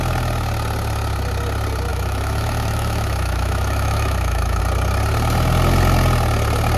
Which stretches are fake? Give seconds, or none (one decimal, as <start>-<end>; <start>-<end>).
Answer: 1.9-4.6